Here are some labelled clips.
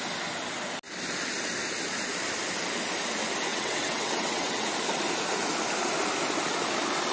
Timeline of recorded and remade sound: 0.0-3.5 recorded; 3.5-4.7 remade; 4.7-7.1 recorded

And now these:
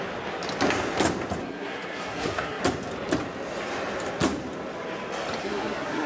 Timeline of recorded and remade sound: 0.0-1.4 recorded; 1.4-2.6 remade; 2.6-5.4 recorded; 5.4-6.1 remade

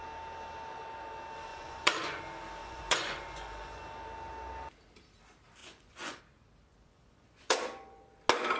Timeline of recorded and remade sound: 0.0-1.5 recorded; 1.5-2.2 remade; 2.2-2.6 recorded; 2.6-3.8 remade; 3.8-5.6 recorded; 5.6-6.2 remade; 6.2-6.7 recorded; 6.7-8.0 remade; 8.0-8.6 recorded

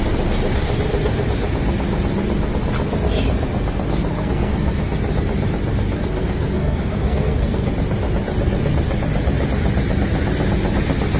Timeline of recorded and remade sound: 0.0-4.1 recorded; 4.1-4.8 remade; 4.8-6.2 recorded; 6.2-7.7 remade; 7.7-11.2 recorded

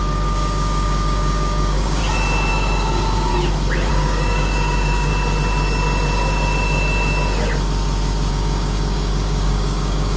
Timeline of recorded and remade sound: 0.0-2.0 remade; 2.0-2.5 recorded; 2.5-3.3 remade; 3.3-3.9 recorded; 3.9-5.1 remade; 5.1-8.3 recorded; 8.3-10.2 remade

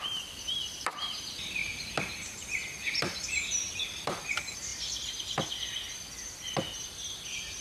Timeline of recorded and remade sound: 0.0-4.7 remade; 4.7-6.9 recorded; 6.9-7.6 remade

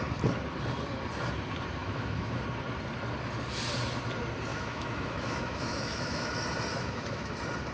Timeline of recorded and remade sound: 0.0-1.8 recorded; 1.8-2.4 remade; 2.4-4.5 recorded; 4.5-6.3 remade; 6.3-6.7 recorded; 6.7-7.3 remade; 7.3-7.7 recorded